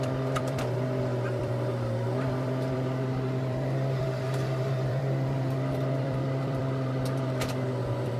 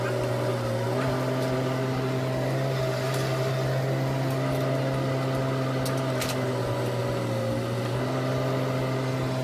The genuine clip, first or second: second